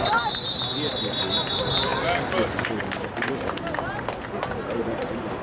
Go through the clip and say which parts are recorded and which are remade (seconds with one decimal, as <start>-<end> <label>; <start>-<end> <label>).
0.0-5.4 recorded

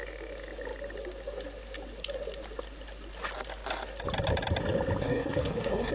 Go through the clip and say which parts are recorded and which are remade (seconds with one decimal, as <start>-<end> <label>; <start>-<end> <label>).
0.0-5.0 recorded; 5.0-5.9 remade

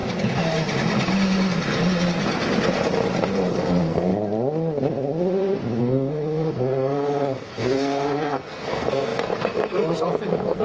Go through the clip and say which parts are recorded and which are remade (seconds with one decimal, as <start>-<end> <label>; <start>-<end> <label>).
0.0-3.3 recorded; 3.3-4.1 remade; 4.1-5.8 recorded; 5.8-10.6 remade

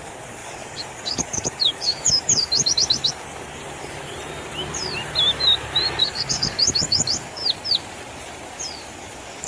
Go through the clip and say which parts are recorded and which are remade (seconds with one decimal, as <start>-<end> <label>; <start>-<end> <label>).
0.0-3.6 remade; 3.6-6.0 recorded; 6.0-7.4 remade; 7.4-8.8 recorded; 8.8-9.5 remade